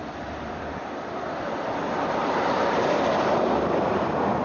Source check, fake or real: fake